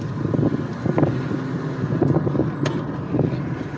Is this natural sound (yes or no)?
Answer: yes